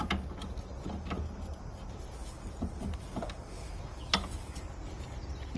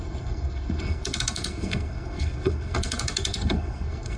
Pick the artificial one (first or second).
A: second